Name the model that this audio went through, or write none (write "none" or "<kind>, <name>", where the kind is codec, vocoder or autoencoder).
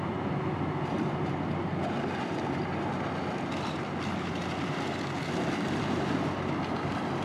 none